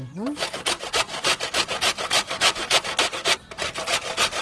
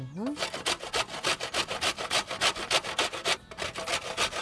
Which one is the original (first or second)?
second